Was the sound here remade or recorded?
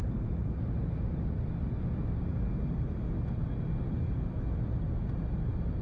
recorded